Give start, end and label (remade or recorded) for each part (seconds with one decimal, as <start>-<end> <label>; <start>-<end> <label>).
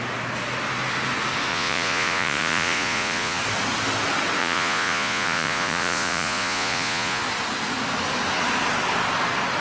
0.0-1.5 recorded; 1.5-3.4 remade; 3.4-4.4 recorded; 4.4-7.2 remade; 7.2-9.6 recorded